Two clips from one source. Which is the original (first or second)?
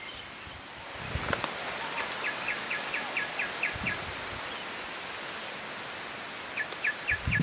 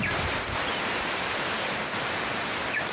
first